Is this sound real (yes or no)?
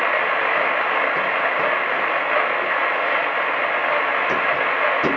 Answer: yes